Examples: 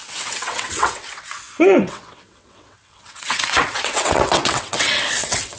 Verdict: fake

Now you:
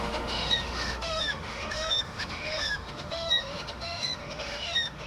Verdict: fake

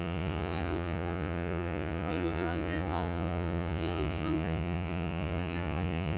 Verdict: fake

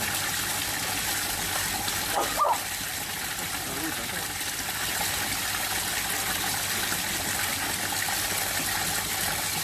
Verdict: real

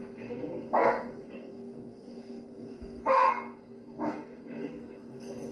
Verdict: fake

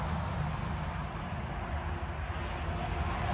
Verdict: real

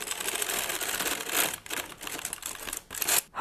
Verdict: real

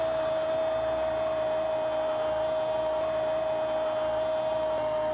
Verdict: real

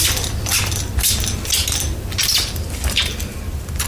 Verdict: real